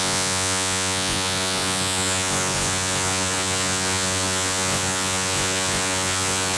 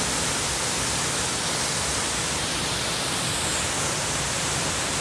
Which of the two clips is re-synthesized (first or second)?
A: first